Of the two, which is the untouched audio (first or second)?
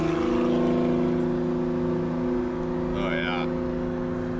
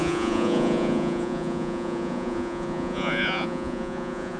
first